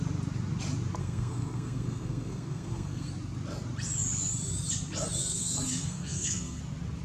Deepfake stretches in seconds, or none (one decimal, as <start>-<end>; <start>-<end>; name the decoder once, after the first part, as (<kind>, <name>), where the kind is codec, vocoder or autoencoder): 1.0-3.1 (codec, SNAC); 5.2-6.6